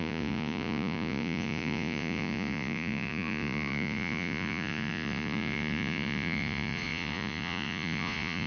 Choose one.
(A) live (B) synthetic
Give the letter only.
B